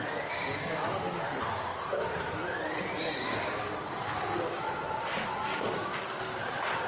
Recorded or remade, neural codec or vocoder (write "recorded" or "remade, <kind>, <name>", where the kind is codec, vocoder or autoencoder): recorded